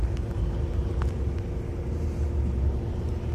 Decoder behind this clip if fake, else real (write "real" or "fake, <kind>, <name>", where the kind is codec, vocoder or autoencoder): real